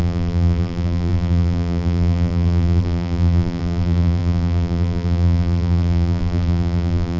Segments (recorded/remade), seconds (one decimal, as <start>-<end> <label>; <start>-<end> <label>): 0.0-7.2 remade